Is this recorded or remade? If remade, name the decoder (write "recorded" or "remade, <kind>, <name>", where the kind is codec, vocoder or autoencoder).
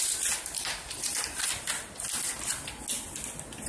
recorded